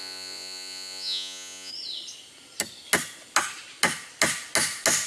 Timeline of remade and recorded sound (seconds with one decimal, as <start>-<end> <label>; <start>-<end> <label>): 0.0-1.7 remade; 1.7-5.1 recorded